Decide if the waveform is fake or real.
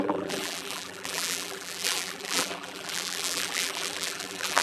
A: fake